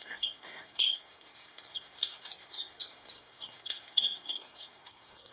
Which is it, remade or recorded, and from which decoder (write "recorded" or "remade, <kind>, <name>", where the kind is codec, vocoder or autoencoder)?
remade, codec, SNAC